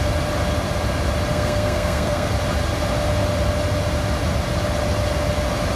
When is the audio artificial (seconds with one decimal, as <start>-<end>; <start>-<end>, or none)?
1.3-2.3